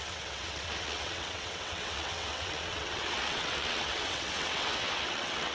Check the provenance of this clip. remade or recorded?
remade